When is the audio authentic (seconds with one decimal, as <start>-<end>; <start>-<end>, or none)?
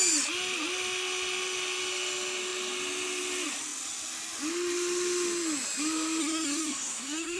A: 0.0-6.2